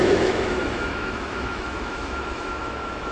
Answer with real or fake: fake